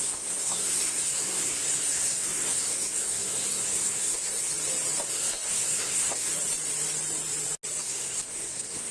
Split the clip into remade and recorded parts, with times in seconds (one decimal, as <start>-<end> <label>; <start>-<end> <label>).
0.0-4.5 remade; 4.5-5.1 recorded; 5.1-6.3 remade; 6.3-7.8 recorded; 7.8-8.9 remade